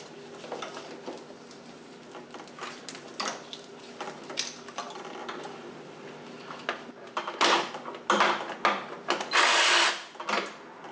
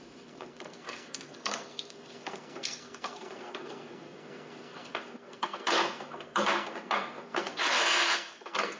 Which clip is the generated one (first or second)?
second